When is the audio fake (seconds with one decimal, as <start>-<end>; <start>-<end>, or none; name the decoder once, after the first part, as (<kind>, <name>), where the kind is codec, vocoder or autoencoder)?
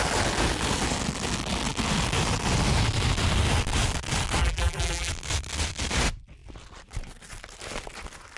4.4-5.1 (vocoder, BigVGAN v2)